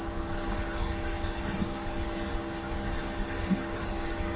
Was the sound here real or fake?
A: fake